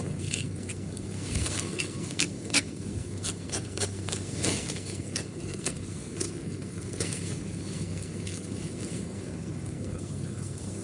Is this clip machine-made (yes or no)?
yes